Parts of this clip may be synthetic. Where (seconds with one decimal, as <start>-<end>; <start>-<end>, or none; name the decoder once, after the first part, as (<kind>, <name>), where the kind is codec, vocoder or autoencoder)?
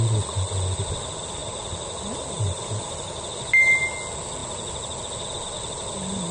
none